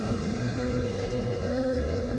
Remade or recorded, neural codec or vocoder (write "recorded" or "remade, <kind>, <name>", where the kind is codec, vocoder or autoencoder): remade, codec, SNAC